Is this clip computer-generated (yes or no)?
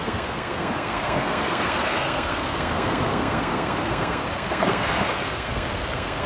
yes